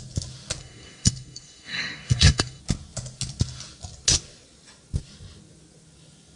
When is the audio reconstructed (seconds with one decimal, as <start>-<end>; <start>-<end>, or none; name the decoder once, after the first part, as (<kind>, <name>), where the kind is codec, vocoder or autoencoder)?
0.6-2.6 (codec, SNAC)